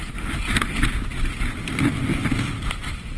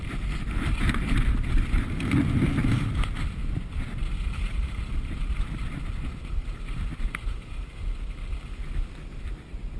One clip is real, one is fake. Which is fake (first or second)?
second